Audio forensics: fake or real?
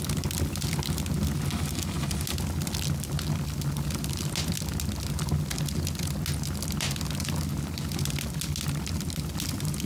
real